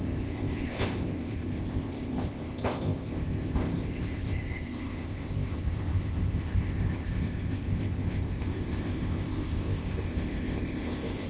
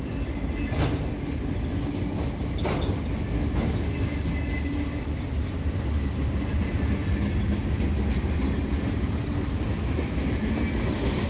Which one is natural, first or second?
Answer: second